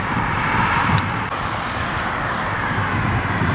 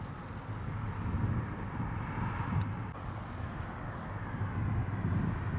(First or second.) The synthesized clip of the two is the first